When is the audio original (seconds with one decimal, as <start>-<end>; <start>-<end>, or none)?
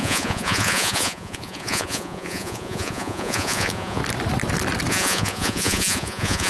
4.0-4.9